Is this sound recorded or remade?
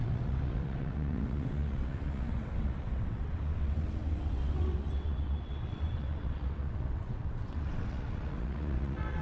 remade